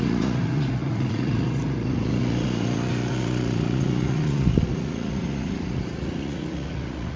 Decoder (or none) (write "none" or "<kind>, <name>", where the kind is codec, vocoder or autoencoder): vocoder, Vocos